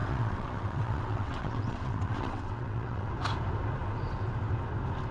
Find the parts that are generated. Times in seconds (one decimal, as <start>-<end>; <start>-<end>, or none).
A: 0.0-3.1